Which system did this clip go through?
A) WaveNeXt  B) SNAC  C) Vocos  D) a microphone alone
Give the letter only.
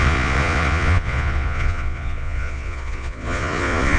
C